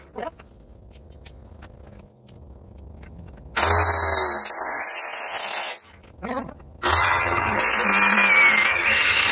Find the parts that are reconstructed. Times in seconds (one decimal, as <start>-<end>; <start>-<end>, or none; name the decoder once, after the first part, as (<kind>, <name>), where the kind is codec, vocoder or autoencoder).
7.0-7.6 (vocoder, HiFi-GAN); 8.7-9.3

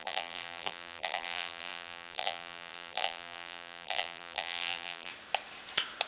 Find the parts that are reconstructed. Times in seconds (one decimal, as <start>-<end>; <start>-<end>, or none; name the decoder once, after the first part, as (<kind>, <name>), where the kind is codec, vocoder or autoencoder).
0.0-5.1 (vocoder, BigVGAN v2)